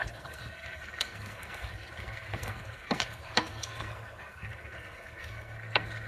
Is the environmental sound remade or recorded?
remade